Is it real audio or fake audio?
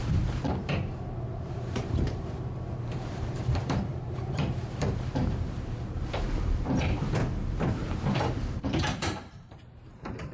fake